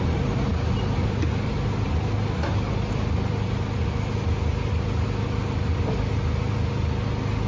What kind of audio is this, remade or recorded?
recorded